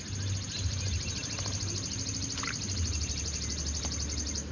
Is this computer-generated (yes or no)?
no